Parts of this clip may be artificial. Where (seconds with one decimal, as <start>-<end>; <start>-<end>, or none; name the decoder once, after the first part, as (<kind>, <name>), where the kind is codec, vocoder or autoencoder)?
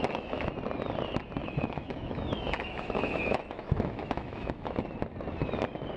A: 0.0-0.5 (autoencoder, DAC-VAE); 1.4-4.8